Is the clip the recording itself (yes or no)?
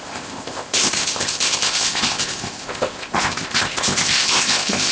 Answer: no